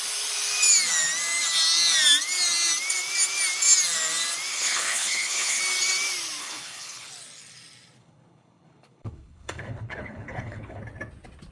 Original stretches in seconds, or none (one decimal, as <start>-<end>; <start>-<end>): 0.0-4.5; 5.6-6.4; 7.1-8.0; 10.8-11.5